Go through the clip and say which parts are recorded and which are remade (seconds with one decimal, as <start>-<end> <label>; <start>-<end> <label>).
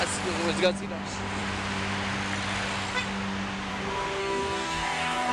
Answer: 0.0-4.2 recorded; 4.2-5.3 remade